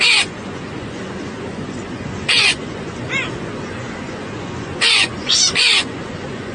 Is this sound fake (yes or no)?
yes